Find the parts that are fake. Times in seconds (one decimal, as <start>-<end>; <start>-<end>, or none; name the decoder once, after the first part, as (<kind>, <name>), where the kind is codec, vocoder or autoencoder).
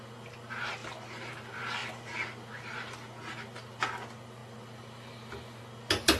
none